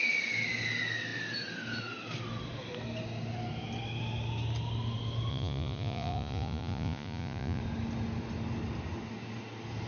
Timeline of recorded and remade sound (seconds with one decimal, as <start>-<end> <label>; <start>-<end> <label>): 0.0-5.3 recorded; 5.3-7.6 remade; 7.6-9.9 recorded